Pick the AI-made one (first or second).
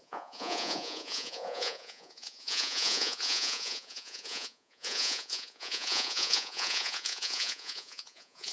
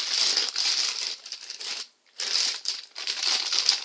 first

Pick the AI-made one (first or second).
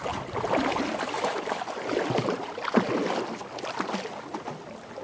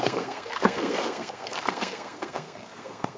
second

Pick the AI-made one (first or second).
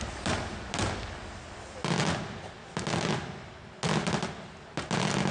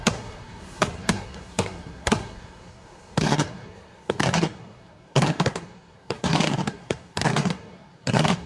second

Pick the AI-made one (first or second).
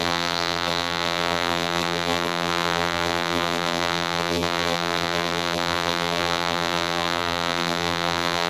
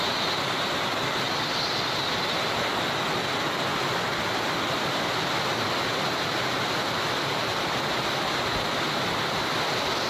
first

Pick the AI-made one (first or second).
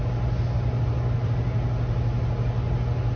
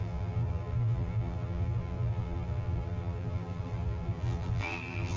second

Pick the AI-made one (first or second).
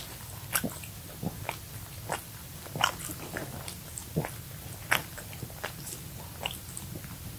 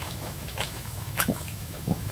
second